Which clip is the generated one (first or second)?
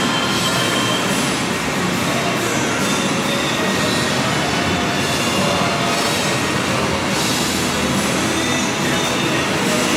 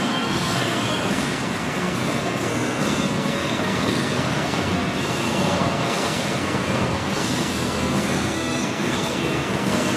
second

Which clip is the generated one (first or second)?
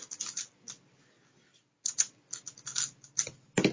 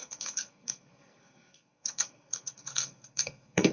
second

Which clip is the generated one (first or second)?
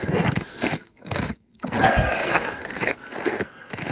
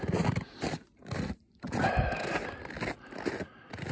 first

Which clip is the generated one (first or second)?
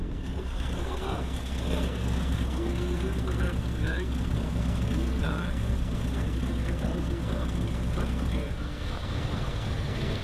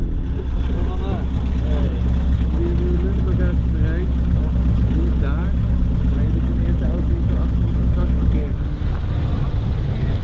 first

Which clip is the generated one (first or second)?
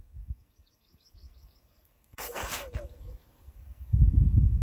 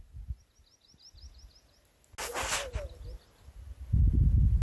first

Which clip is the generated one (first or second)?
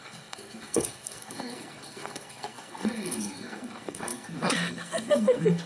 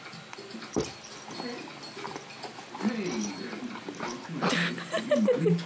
first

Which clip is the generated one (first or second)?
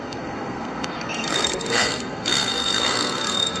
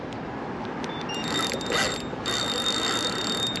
first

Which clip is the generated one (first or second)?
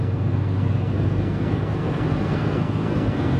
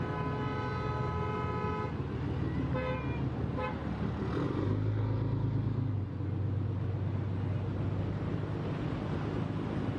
first